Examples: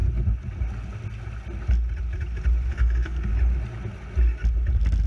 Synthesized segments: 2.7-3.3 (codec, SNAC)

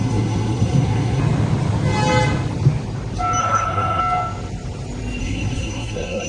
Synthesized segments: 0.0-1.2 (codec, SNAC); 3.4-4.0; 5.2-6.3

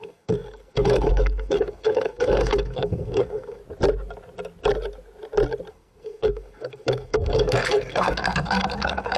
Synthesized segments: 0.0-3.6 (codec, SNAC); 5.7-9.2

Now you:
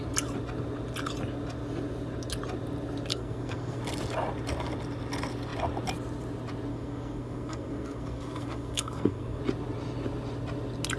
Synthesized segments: 3.1-3.8 (codec, SNAC); 6.7-9.4